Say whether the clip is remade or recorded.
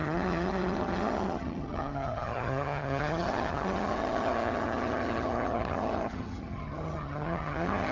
remade